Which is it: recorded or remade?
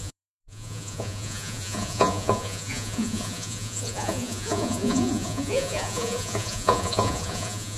remade